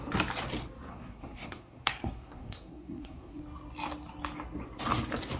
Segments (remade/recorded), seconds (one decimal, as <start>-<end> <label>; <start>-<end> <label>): 0.0-0.9 recorded; 0.9-3.4 remade; 3.4-5.4 recorded

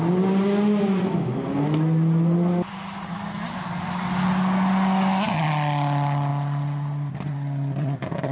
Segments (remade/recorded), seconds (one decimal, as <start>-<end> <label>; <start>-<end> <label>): 0.0-8.3 recorded

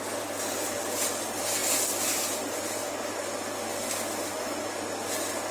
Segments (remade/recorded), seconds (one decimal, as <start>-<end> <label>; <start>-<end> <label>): 0.0-5.5 recorded

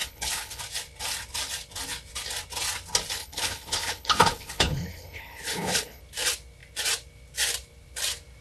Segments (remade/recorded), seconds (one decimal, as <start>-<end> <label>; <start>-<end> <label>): 0.0-0.6 remade; 0.6-3.2 recorded; 3.2-6.0 remade; 6.0-8.4 recorded

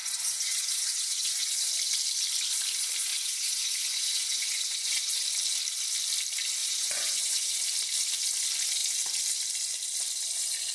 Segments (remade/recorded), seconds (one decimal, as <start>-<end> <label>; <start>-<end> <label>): 0.0-1.7 remade; 1.7-3.1 recorded; 3.1-5.2 remade; 5.2-6.6 recorded; 6.6-7.6 remade; 7.6-10.7 recorded